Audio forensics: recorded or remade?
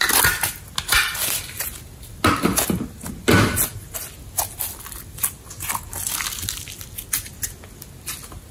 recorded